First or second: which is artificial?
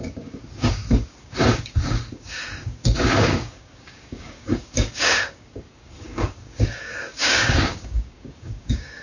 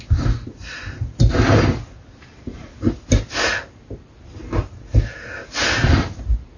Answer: first